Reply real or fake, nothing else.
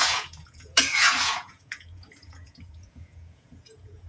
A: fake